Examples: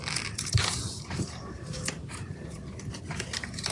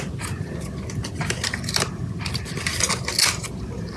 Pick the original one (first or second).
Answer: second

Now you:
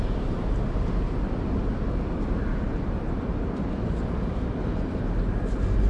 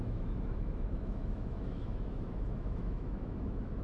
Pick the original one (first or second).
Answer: first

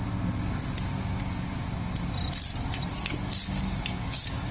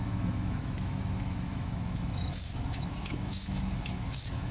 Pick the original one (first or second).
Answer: first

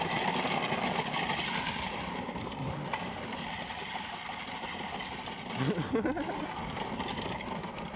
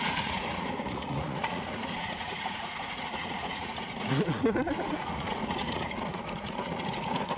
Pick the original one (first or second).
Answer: first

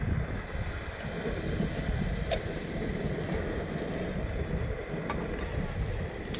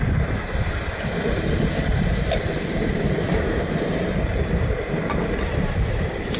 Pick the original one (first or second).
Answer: first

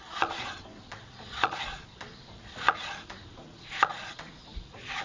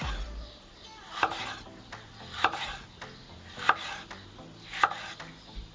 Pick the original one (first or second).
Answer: second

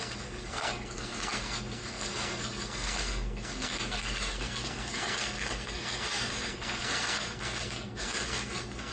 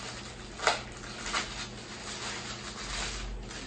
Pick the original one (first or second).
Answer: second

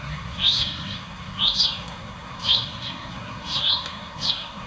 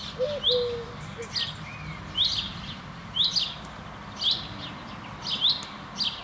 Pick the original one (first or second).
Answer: second